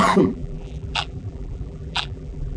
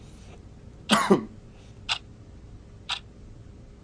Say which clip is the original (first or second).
second